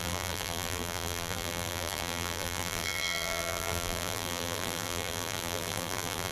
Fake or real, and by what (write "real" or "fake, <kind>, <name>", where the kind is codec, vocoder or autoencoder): fake, vocoder, BigVGAN v2